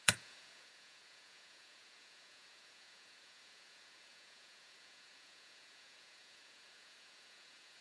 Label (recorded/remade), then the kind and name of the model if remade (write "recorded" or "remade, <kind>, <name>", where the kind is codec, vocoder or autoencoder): remade, vocoder, Vocos